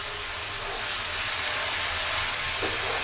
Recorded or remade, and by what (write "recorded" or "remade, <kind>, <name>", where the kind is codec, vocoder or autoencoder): recorded